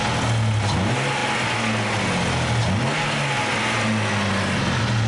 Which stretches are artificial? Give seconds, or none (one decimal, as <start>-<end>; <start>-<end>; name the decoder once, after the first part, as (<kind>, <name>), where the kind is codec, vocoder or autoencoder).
none